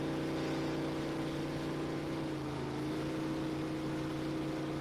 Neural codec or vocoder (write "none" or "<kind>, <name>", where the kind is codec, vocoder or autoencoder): none